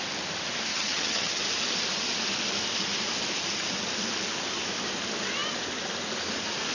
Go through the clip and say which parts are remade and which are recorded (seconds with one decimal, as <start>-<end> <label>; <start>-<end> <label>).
0.0-0.7 recorded; 0.7-1.4 remade; 1.4-6.7 recorded